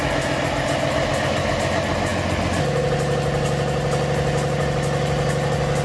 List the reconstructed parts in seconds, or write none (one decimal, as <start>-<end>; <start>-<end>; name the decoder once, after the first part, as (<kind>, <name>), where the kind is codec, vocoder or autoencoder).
none